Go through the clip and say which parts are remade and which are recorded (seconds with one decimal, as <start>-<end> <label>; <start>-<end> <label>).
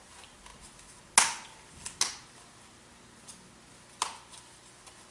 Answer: 0.0-5.1 recorded